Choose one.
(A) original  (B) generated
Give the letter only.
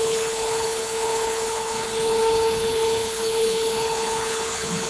B